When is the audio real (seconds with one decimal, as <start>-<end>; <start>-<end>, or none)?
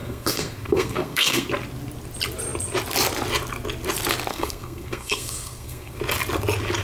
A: 1.5-4.3; 6.0-6.8